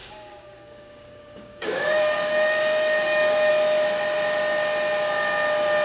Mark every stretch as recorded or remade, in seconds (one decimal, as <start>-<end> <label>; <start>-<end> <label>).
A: 0.0-3.5 remade; 3.5-5.8 recorded